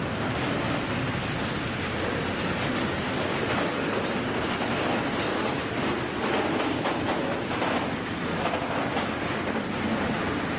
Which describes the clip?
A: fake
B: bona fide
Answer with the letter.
B